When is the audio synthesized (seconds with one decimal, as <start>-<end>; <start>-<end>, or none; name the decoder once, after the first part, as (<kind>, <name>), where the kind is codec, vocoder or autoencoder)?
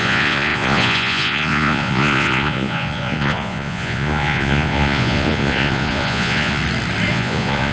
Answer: 0.0-6.6 (vocoder, Vocos); 7.1-7.7